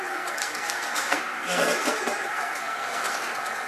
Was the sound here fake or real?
fake